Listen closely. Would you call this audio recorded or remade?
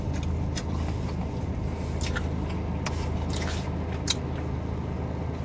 recorded